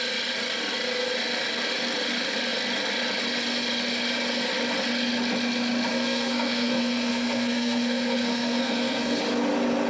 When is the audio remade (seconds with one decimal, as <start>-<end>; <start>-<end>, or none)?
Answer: 5.9-9.2